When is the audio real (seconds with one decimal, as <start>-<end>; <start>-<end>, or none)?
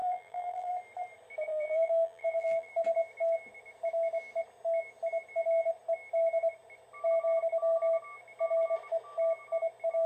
0.7-1.5; 2.7-10.1